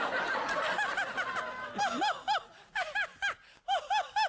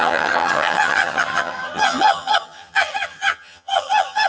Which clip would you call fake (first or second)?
second